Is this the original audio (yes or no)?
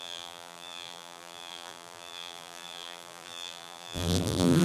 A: no